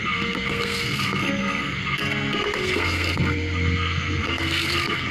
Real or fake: fake